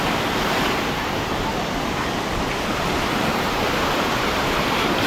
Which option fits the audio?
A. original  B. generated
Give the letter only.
B